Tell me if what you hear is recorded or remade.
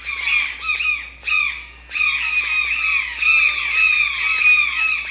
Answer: recorded